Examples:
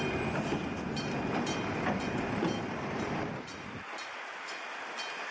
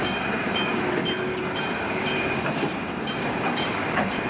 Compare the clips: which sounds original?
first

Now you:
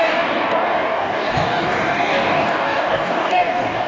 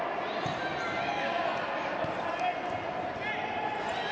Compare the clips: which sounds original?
second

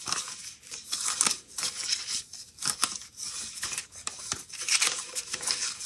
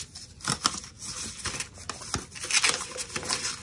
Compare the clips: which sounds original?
second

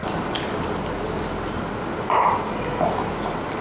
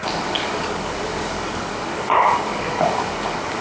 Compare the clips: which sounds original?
first